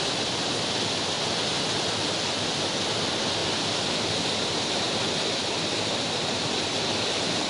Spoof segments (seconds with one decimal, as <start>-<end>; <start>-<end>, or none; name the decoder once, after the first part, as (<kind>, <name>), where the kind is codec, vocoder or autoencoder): none